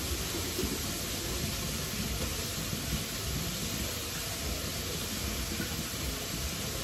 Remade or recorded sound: recorded